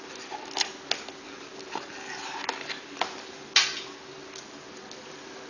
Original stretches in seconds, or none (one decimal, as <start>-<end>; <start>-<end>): 0.0-5.5